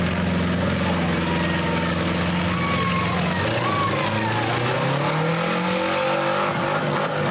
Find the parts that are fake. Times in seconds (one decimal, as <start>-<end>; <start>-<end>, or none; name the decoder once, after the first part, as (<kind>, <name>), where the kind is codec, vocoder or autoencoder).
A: none